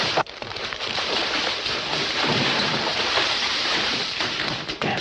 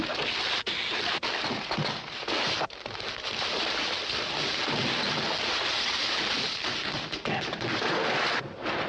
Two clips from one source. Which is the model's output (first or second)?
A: first